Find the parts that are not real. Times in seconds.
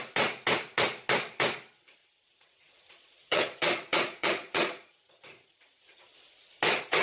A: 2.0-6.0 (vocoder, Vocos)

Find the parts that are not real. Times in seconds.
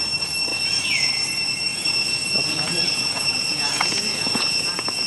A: 0.5-1.1 (vocoder, Vocos); 1.7-5.1